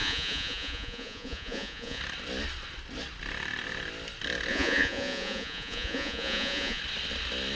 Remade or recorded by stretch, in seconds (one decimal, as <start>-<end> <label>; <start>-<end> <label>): 0.0-2.0 remade; 2.0-4.5 recorded; 4.5-6.8 remade; 6.8-7.5 recorded